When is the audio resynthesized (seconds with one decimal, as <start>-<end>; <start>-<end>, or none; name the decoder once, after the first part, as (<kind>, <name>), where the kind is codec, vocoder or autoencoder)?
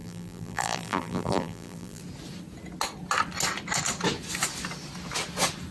0.0-2.0 (vocoder, BigVGAN v2)